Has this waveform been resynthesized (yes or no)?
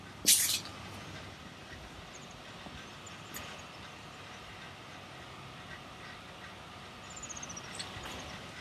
no